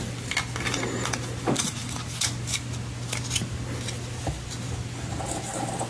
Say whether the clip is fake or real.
real